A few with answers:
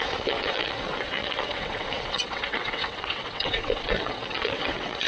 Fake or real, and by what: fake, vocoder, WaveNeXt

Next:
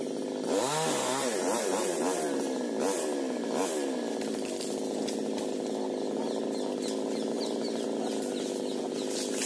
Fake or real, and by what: real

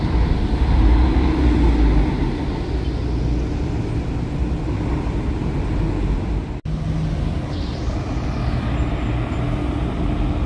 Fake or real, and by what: real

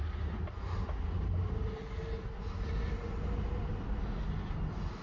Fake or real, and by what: real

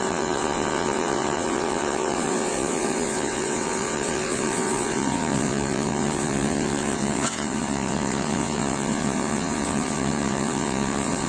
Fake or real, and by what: fake, vocoder, WaveNeXt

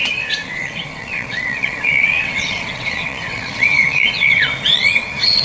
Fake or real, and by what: fake, vocoder, WaveNeXt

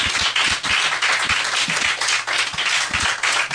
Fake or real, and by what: real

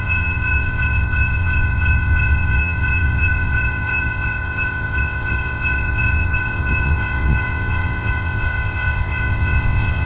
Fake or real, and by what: fake, vocoder, WaveNeXt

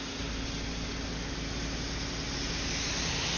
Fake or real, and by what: real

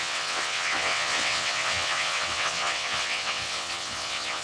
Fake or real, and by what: fake, vocoder, WaveNeXt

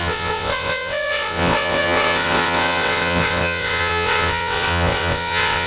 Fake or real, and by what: fake, vocoder, WaveNeXt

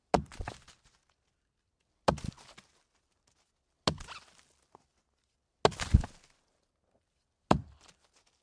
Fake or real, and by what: real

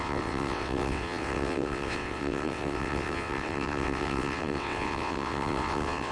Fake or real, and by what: fake, vocoder, WaveNeXt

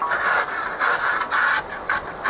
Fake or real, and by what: real